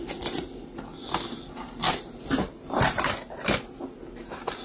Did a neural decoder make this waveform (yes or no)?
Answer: no